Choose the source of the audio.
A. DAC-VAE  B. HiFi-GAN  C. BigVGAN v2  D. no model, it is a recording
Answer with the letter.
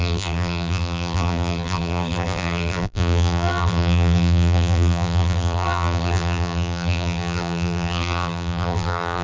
C